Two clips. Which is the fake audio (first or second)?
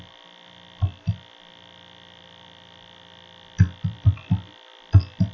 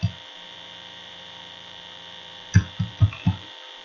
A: second